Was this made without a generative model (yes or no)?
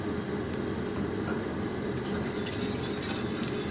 yes